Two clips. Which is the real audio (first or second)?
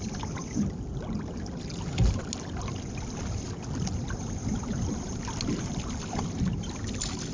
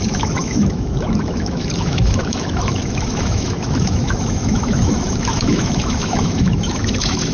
first